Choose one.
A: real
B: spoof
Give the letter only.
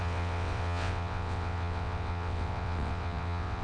B